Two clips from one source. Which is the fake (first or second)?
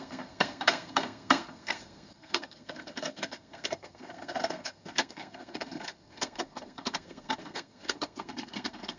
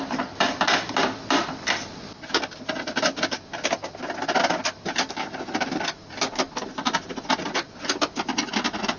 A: first